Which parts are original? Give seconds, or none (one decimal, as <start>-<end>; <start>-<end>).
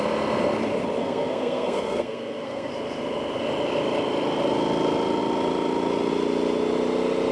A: 0.0-1.0; 2.7-7.3